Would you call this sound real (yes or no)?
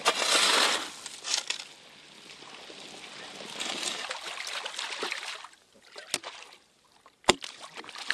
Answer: yes